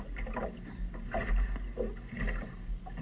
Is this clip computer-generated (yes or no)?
no